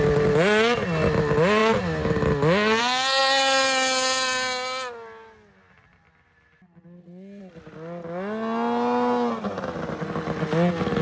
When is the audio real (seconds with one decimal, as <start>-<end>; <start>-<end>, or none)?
0.0-11.0